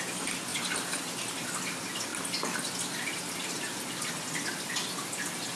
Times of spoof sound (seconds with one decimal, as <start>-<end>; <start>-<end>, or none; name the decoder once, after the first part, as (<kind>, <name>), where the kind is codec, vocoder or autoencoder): none